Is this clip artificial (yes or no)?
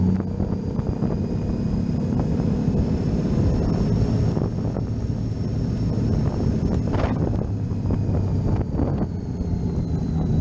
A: no